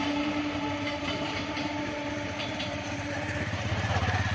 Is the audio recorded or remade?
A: remade